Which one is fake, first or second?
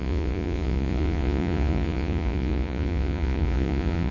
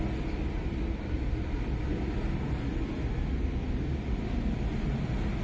first